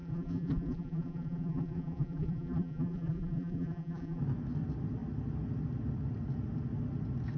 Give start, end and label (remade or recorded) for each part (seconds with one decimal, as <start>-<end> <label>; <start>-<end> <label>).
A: 0.0-4.2 remade; 4.2-7.4 recorded